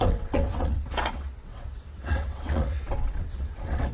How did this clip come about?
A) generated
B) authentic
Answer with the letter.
A